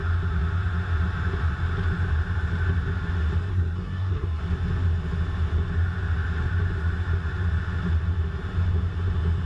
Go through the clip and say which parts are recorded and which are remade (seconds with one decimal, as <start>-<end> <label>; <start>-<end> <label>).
0.0-3.5 recorded; 3.5-4.4 remade; 4.4-9.5 recorded